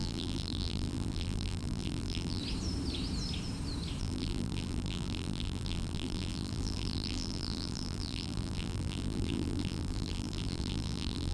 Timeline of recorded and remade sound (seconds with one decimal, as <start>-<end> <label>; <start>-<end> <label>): 0.0-2.4 remade; 2.4-4.0 recorded; 4.0-11.3 remade